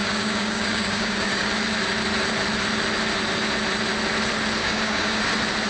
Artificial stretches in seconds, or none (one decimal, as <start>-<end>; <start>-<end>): 0.0-1.5; 4.6-5.2